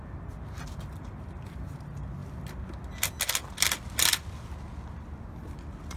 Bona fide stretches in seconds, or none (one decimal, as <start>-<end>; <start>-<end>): 0.0-6.0